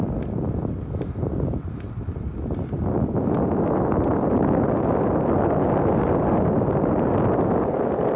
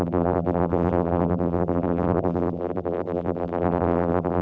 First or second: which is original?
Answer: first